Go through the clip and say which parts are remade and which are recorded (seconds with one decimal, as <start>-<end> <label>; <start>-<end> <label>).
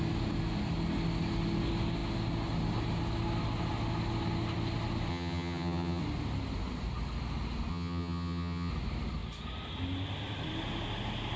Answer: 0.0-5.1 recorded; 5.1-6.0 remade; 6.0-7.7 recorded; 7.7-8.7 remade; 8.7-11.4 recorded